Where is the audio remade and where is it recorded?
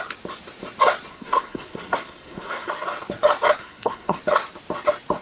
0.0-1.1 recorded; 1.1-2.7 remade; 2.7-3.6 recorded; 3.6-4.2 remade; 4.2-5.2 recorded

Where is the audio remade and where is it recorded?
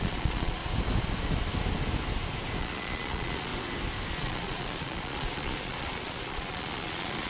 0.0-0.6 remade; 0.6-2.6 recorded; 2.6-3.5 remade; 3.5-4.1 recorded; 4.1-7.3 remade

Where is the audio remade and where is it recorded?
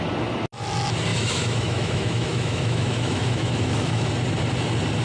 0.0-1.1 recorded; 1.1-4.1 remade; 4.1-5.0 recorded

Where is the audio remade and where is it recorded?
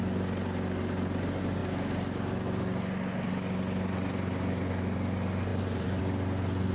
0.0-5.5 recorded; 5.5-6.0 remade; 6.0-6.7 recorded